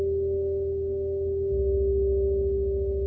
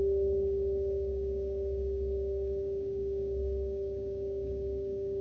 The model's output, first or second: second